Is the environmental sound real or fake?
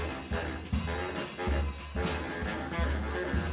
real